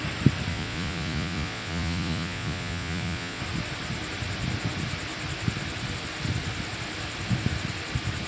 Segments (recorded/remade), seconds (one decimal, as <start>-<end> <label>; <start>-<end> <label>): 0.0-0.5 recorded; 0.5-3.4 remade; 3.4-8.3 recorded